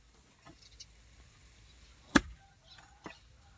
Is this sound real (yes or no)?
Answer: yes